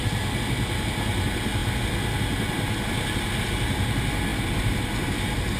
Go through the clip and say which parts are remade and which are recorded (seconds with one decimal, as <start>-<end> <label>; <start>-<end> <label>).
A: 0.0-5.6 recorded